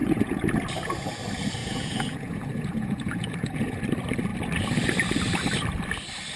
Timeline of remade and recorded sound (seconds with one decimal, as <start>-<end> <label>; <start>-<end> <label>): 0.0-0.5 remade; 0.5-1.6 recorded; 1.6-3.8 remade; 3.8-6.4 recorded